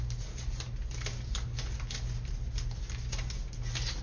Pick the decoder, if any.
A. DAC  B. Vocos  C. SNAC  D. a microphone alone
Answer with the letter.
D